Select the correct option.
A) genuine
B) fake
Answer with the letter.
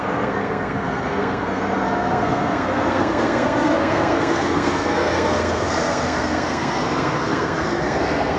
B